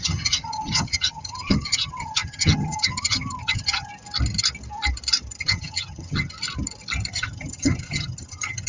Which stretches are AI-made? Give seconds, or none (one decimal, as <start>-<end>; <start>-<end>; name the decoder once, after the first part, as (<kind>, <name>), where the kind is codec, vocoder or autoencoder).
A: 0.0-3.9 (vocoder, HiFi-GAN); 5.4-6.4; 7.1-8.7